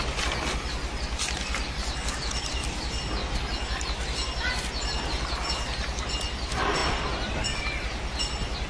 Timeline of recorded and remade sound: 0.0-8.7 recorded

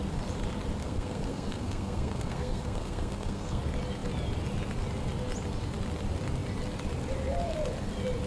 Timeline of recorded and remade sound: 0.0-0.8 recorded; 0.8-3.6 remade; 3.6-8.3 recorded

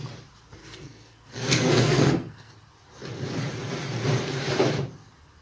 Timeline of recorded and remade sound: 0.0-0.6 recorded; 0.6-2.5 remade; 2.5-5.4 recorded

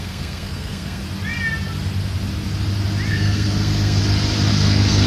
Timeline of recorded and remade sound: 0.0-1.0 remade; 1.0-3.1 recorded; 3.1-4.0 remade; 4.0-4.5 recorded; 4.5-5.1 remade

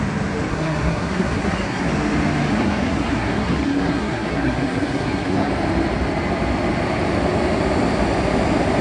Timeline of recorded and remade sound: 0.0-0.5 recorded; 0.5-1.9 remade; 1.9-2.5 recorded; 2.5-5.5 remade; 5.5-8.8 recorded

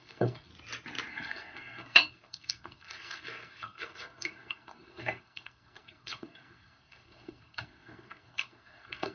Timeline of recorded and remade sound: 0.0-0.5 remade; 0.5-1.1 recorded; 1.1-9.1 remade

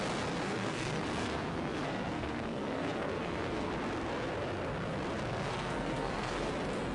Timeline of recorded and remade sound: 0.0-0.4 recorded; 0.4-3.7 remade; 3.7-5.3 recorded; 5.3-6.5 remade; 6.5-6.9 recorded